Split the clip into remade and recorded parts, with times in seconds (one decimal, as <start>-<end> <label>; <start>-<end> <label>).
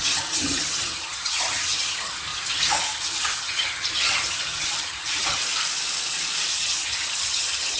0.0-5.4 remade; 5.4-6.5 recorded; 6.5-7.8 remade